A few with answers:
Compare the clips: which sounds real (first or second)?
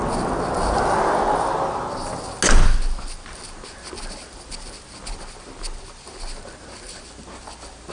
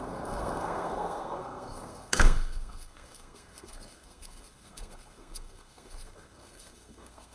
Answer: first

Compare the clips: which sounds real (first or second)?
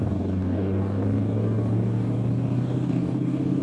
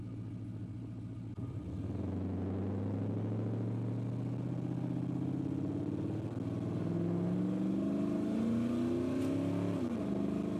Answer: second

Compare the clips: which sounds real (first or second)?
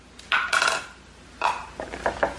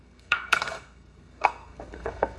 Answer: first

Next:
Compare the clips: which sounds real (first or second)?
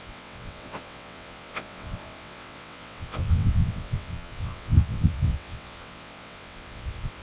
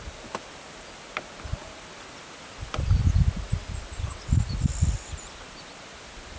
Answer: second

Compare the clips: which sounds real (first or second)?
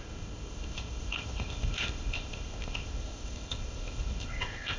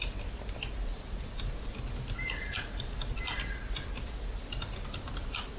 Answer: second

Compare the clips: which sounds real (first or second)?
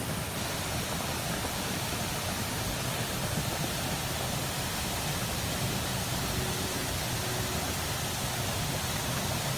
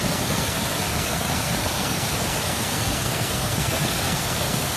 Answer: first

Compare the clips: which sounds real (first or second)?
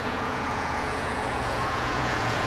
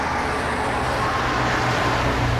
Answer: second